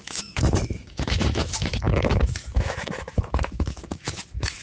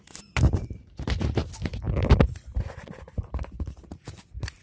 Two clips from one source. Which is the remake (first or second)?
first